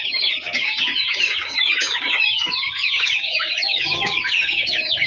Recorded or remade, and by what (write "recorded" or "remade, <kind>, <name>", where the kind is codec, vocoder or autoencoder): remade, codec, DAC